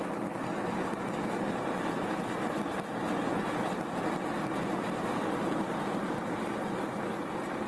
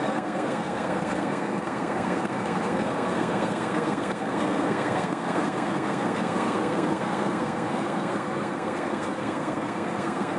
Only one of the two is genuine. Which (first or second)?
first